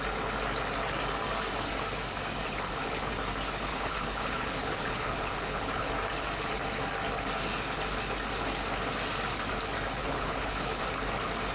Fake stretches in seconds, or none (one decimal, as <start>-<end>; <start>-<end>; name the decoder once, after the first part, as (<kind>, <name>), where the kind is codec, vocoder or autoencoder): 2.5-3.1 (codec, HILCodec); 3.7-5.9; 10.0-10.8